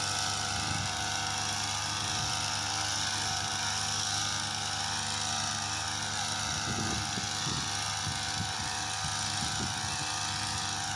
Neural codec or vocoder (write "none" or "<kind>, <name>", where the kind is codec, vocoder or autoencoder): none